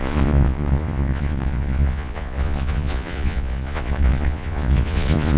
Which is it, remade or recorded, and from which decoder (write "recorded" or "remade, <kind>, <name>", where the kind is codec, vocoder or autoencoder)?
remade, vocoder, Vocos